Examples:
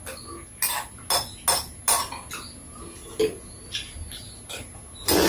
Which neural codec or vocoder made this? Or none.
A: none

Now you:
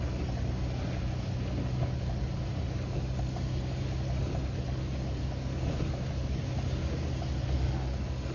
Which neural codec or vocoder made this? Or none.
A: none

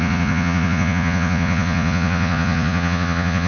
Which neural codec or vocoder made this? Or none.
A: vocoder, Vocos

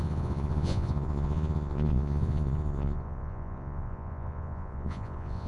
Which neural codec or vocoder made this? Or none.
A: vocoder, Vocos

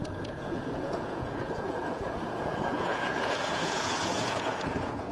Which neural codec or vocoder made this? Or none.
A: vocoder, Vocos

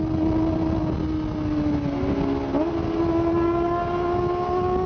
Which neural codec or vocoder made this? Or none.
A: none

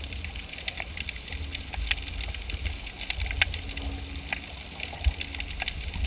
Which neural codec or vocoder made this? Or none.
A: none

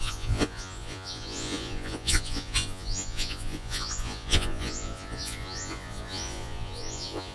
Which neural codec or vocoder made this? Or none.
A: vocoder, Vocos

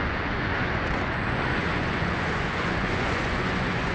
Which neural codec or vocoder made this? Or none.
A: vocoder, Vocos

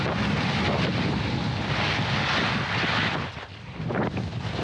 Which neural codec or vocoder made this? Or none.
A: none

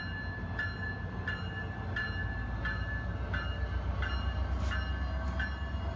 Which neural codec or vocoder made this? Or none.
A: none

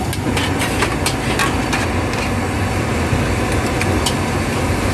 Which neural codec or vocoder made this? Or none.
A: none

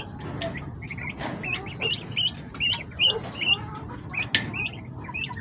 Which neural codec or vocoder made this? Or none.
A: none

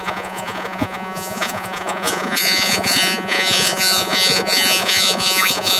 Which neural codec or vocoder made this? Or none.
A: vocoder, Vocos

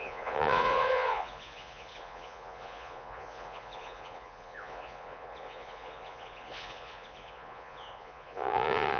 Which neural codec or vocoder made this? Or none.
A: vocoder, Vocos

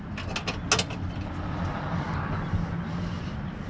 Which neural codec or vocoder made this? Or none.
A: none